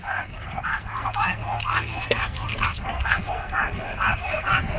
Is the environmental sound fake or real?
fake